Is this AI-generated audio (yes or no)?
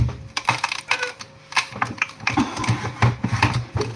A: no